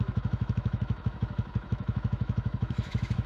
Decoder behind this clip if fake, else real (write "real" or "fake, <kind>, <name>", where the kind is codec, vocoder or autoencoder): fake, autoencoder, DAC-VAE